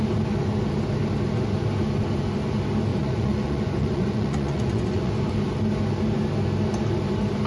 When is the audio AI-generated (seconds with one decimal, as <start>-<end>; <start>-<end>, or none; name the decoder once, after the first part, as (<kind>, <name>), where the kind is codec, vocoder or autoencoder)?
2.9-5.1 (vocoder, Vocos)